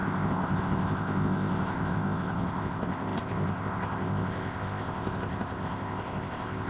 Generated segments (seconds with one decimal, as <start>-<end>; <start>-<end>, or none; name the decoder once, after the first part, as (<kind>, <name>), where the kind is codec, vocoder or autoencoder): 0.0-6.7 (codec, ZipCodec)